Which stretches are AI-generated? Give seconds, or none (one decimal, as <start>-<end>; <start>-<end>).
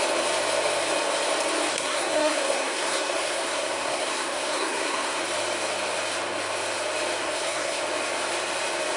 1.7-5.2; 7.2-7.8